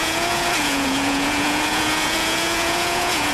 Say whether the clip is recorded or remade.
remade